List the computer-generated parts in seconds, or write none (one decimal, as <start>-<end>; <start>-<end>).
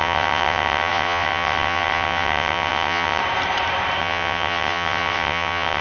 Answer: 0.0-3.2; 4.0-5.8